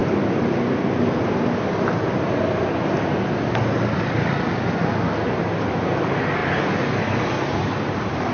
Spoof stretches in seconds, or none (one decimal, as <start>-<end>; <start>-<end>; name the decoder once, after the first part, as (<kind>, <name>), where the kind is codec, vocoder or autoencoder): none